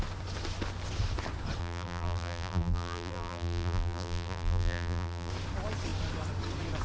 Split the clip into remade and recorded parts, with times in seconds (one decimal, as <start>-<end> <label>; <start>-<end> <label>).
0.0-1.6 recorded; 1.6-5.3 remade; 5.3-6.8 recorded